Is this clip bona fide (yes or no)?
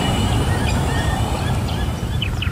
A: no